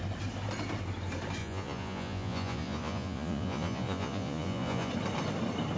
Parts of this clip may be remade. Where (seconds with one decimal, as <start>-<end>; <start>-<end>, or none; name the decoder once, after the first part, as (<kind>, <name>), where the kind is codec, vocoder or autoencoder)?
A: 1.4-4.9 (vocoder, Vocos)